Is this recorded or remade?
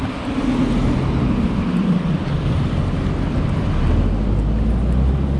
recorded